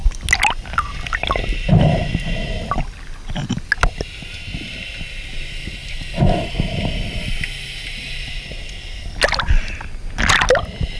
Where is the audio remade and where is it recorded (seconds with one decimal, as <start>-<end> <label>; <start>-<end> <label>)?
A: 0.0-11.0 recorded